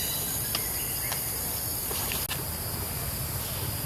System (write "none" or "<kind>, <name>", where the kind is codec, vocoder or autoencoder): none